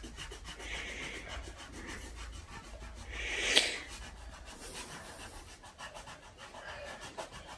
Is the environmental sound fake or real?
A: real